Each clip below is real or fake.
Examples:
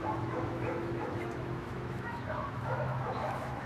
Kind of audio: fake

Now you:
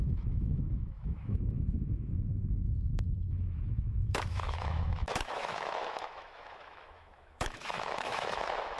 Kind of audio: fake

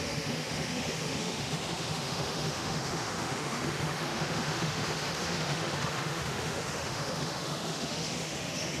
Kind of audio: fake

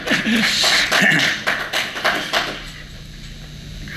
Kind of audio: real